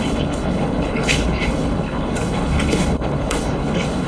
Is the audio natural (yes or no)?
no